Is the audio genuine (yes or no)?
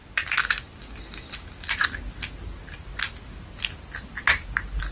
yes